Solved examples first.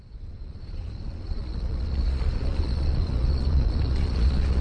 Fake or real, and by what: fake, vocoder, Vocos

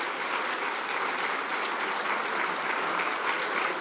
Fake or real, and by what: real